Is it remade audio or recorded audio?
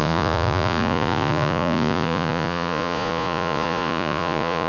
remade